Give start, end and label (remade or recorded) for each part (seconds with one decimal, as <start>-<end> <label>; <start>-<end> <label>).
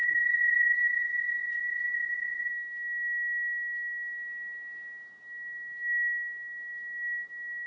0.0-2.5 remade; 2.5-7.7 recorded